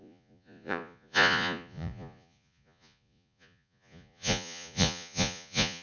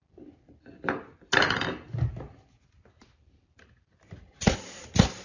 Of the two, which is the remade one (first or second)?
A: first